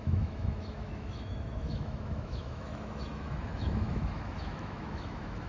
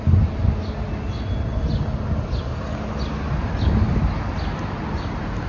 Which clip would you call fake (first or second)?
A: first